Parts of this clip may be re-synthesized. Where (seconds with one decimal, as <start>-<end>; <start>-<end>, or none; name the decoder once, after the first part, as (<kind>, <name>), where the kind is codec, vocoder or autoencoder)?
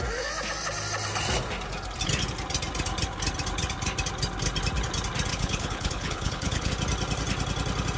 5.3-6.7 (codec, HILCodec)